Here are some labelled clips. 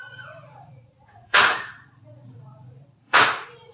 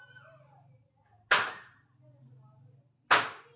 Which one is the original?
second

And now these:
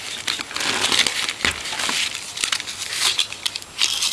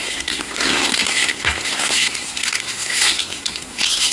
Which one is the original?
first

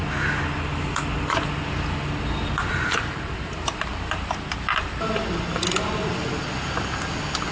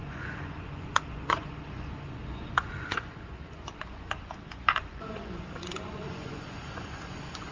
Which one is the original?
first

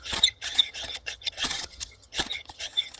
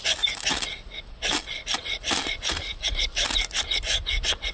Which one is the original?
second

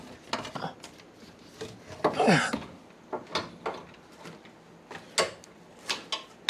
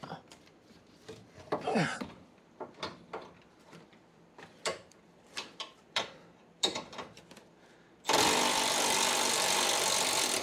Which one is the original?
first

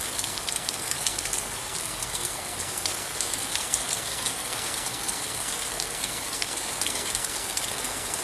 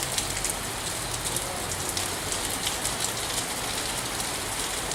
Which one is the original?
second